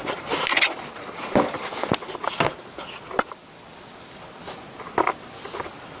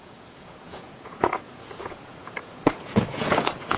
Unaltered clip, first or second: first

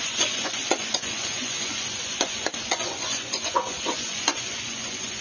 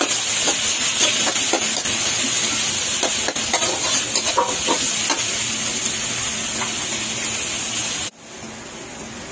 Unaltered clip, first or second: second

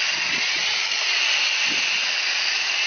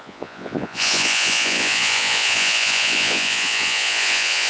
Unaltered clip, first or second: first